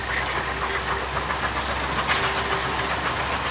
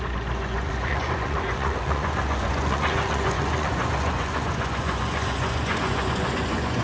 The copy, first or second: second